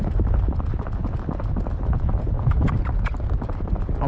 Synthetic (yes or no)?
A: no